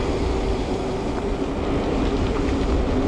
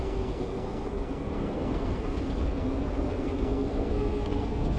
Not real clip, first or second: second